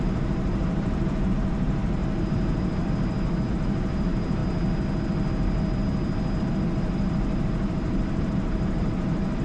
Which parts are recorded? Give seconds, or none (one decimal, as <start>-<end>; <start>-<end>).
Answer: 2.0-3.5; 4.4-6.4